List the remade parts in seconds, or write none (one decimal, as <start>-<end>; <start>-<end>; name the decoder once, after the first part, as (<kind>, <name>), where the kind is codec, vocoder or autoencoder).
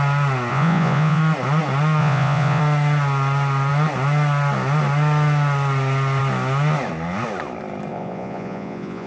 0.5-1.2 (vocoder, Vocos); 2.0-2.6; 7.9-9.1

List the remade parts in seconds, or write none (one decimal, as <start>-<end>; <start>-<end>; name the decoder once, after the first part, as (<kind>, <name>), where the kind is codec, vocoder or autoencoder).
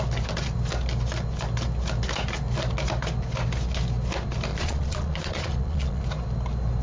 4.5-6.0 (vocoder, Vocos)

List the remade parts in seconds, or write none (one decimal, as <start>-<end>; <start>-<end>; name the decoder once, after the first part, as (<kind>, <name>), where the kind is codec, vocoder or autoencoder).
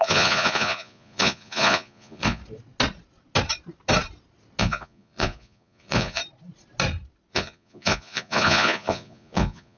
0.0-2.4 (vocoder, Vocos); 4.6-6.2; 7.3-9.8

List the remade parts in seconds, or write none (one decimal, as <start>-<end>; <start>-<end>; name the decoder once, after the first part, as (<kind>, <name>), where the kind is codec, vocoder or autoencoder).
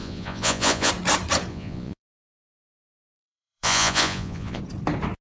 0.0-0.9 (vocoder, Vocos); 1.5-4.6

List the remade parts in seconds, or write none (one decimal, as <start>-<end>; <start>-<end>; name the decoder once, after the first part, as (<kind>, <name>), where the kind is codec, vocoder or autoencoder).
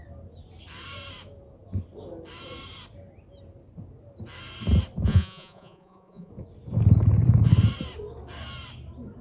5.1-6.3 (vocoder, Vocos)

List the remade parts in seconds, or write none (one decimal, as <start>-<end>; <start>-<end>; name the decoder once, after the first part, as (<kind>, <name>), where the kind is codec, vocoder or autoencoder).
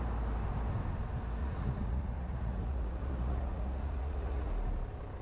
1.4-4.5 (vocoder, Vocos)